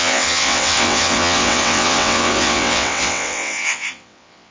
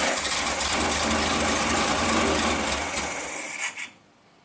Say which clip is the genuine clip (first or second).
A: second